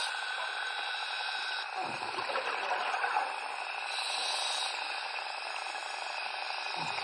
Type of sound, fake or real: real